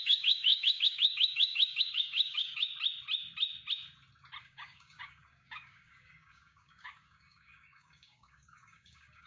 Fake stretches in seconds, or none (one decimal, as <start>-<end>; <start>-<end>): 0.0-2.7; 4.4-9.3

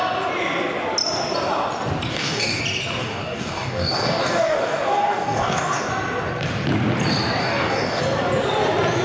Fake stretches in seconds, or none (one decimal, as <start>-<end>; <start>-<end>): 2.1-2.6; 3.0-5.9; 7.4-8.0

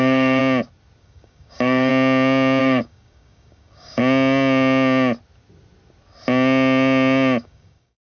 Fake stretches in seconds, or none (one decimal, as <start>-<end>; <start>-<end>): 0.0-0.4; 1.0-1.9; 2.6-4.0; 7.4-8.2

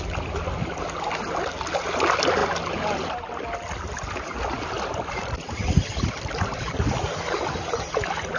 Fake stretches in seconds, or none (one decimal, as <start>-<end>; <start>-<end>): none

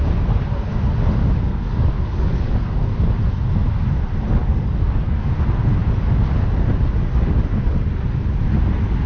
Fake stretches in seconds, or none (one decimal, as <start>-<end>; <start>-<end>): 1.5-2.8; 4.4-5.3